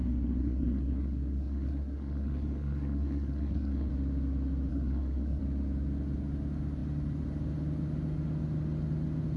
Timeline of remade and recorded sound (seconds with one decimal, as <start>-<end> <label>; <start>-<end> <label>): 0.0-3.9 remade; 3.9-4.7 recorded; 4.7-5.4 remade; 5.4-9.4 recorded